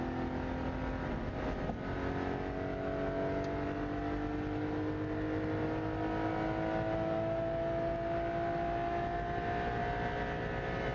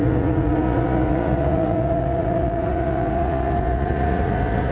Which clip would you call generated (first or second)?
second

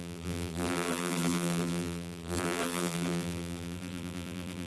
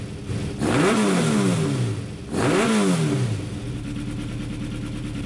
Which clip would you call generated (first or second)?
first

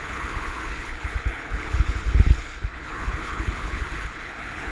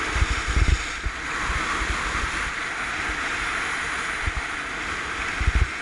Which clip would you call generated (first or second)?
first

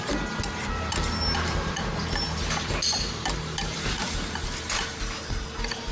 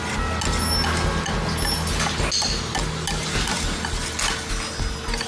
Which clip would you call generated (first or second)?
first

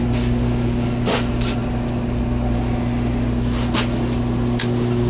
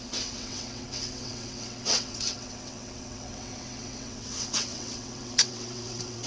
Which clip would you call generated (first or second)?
second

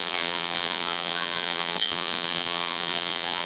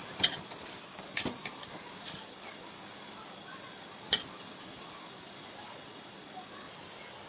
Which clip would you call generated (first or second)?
first